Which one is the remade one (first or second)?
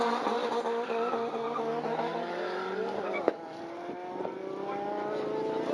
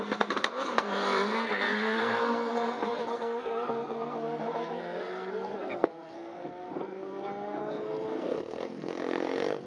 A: second